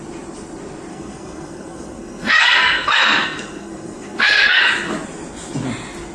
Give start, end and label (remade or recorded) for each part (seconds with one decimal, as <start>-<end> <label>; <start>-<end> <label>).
0.0-0.9 recorded; 0.9-4.6 remade; 4.6-6.1 recorded